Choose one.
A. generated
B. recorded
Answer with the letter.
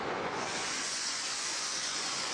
A